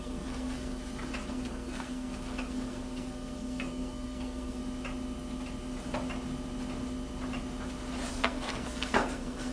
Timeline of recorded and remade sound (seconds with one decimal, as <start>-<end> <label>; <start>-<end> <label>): 0.0-0.8 remade; 0.8-1.3 recorded; 1.3-4.6 remade; 4.6-8.1 recorded; 8.1-9.5 remade

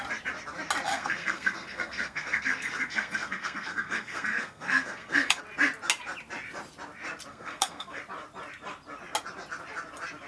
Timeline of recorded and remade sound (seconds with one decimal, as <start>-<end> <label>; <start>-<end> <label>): 0.0-0.9 recorded; 0.9-5.4 remade; 5.4-7.3 recorded; 7.3-8.0 remade; 8.0-10.3 recorded

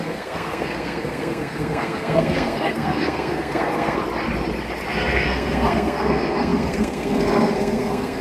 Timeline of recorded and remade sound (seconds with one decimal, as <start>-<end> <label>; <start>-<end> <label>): 0.0-4.0 remade; 4.0-4.9 recorded; 4.9-8.2 remade

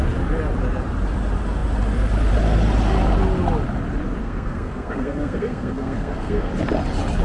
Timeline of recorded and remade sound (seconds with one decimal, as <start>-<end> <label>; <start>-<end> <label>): 0.0-4.2 recorded; 4.2-6.5 remade; 6.5-7.2 recorded

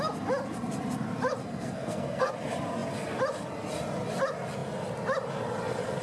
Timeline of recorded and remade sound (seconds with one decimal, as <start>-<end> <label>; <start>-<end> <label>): 0.0-1.4 recorded; 1.4-2.3 remade; 2.3-6.0 recorded

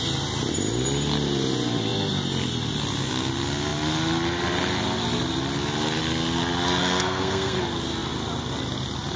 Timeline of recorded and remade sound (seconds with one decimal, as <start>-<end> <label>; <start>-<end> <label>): 0.0-6.8 recorded; 6.8-7.6 remade; 7.6-9.2 recorded

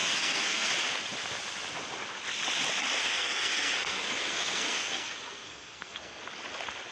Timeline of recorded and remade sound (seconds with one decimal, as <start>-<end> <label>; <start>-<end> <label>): 0.0-0.7 remade; 0.7-3.0 recorded; 3.0-6.2 remade; 6.2-6.9 recorded

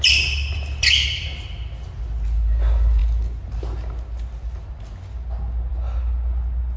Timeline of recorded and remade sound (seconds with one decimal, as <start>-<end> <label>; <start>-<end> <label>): 0.0-6.8 recorded